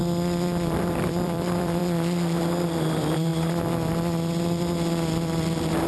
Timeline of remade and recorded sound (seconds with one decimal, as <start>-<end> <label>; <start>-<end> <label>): 0.0-1.8 remade; 1.8-2.4 recorded; 2.4-3.3 remade; 3.3-4.4 recorded; 4.4-5.9 remade